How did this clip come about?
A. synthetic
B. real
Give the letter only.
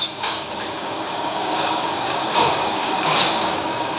A